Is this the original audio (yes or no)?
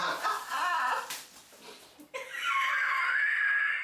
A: yes